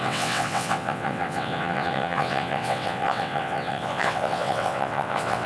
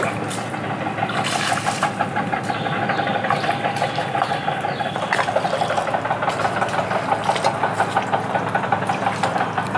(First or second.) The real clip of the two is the second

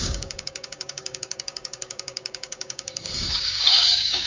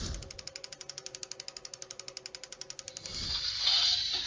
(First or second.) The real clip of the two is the second